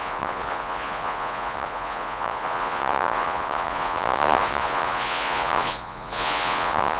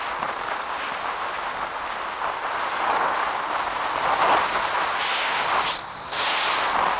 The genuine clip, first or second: second